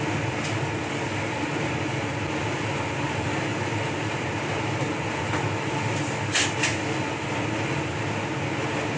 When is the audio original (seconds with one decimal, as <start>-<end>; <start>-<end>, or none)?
0.0-9.0